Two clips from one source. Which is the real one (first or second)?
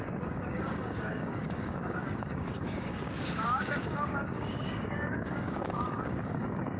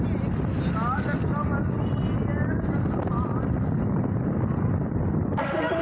second